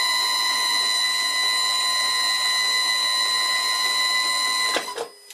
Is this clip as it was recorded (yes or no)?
yes